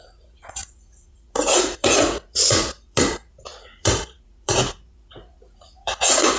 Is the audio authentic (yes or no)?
no